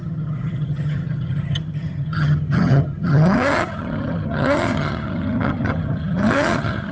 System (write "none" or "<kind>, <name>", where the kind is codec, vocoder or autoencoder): vocoder, HiFi-GAN